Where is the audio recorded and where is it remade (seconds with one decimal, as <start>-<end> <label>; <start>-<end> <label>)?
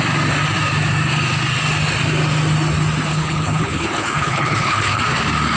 0.0-3.1 recorded; 3.1-5.0 remade; 5.0-5.6 recorded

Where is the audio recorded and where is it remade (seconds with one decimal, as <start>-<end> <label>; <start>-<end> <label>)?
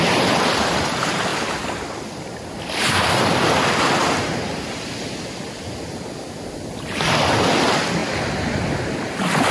0.0-9.5 recorded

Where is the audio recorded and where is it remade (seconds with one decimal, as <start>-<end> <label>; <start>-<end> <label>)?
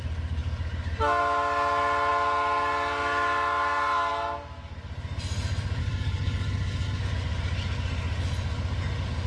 0.0-5.8 recorded; 5.8-7.0 remade; 7.0-9.3 recorded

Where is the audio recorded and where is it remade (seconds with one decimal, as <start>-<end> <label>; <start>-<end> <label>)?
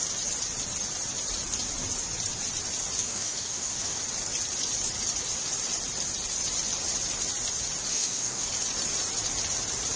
0.0-3.0 recorded; 3.0-4.0 remade; 4.0-7.9 recorded; 7.9-8.5 remade; 8.5-10.0 recorded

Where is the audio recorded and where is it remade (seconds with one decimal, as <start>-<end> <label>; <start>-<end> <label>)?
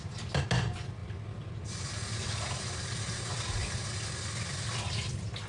0.0-5.5 recorded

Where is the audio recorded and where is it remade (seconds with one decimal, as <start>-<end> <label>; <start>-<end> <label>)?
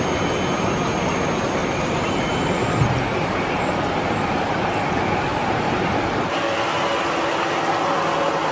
0.0-1.6 recorded; 1.6-2.3 remade; 2.3-3.1 recorded; 3.1-3.9 remade; 3.9-5.3 recorded; 5.3-5.9 remade; 5.9-8.5 recorded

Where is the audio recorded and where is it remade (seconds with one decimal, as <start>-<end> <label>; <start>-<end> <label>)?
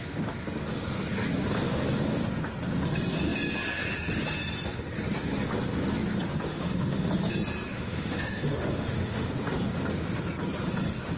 0.0-6.5 recorded; 6.5-7.1 remade; 7.1-7.7 recorded; 7.7-9.3 remade; 9.3-11.2 recorded